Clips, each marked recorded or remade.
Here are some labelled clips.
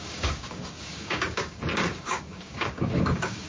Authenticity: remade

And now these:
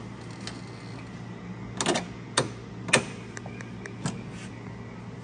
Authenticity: recorded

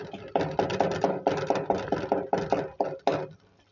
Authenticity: recorded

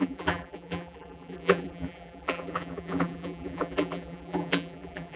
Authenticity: remade